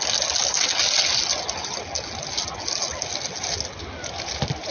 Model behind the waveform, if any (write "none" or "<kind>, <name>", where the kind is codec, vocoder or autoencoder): none